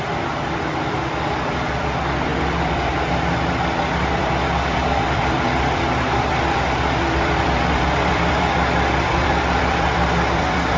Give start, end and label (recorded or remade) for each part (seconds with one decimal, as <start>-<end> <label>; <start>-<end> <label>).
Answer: 0.0-10.8 remade